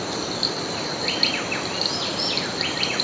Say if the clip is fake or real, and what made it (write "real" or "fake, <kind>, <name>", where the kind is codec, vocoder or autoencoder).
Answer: real